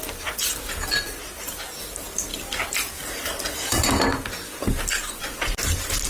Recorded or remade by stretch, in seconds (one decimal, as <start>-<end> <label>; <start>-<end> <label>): 0.0-2.3 recorded; 2.3-3.7 remade; 3.7-6.1 recorded